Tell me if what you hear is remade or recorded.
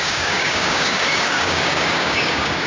remade